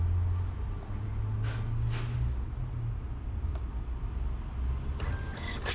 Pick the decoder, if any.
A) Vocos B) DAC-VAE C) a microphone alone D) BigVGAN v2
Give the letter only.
C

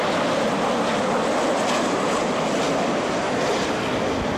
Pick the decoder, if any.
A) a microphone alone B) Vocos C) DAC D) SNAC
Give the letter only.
A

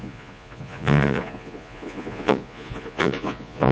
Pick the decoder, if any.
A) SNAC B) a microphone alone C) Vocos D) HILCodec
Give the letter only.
C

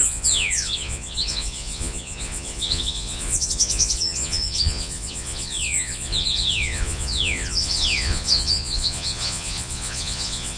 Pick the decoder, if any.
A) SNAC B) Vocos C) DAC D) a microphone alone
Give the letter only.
B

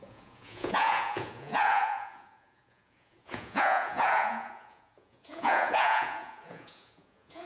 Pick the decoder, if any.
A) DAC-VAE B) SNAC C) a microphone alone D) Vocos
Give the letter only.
D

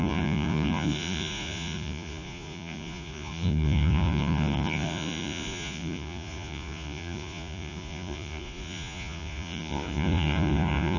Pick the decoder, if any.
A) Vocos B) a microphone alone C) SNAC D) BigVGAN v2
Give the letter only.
A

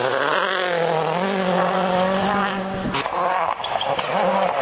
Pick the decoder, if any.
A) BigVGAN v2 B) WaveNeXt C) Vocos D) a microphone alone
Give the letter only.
D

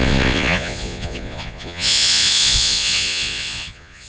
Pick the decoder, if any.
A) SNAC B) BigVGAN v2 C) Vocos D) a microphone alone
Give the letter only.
C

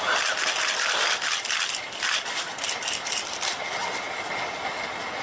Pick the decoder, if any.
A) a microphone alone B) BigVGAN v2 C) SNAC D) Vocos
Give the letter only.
A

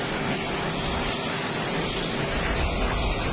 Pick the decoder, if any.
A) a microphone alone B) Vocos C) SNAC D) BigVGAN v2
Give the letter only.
A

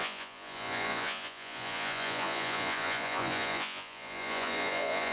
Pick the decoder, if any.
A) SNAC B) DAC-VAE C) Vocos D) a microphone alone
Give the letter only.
C